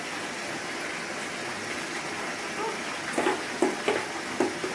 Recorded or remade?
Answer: recorded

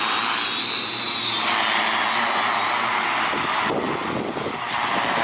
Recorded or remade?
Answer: recorded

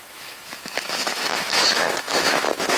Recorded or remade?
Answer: remade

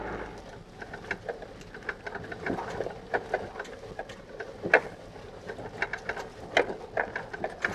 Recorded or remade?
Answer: recorded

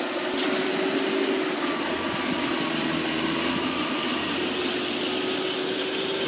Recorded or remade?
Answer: recorded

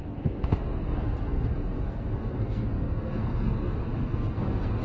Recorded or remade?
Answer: remade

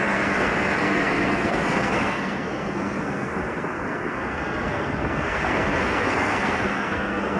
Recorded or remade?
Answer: remade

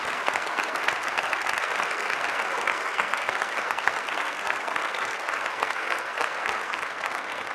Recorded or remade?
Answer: remade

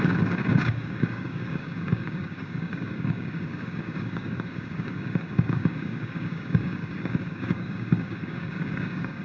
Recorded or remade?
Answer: remade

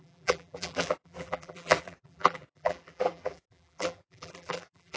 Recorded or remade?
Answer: remade